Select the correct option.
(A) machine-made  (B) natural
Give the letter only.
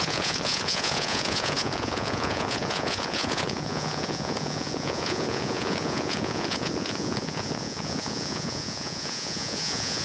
A